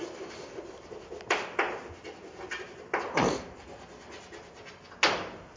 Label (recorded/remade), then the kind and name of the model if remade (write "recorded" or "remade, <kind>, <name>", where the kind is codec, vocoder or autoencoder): recorded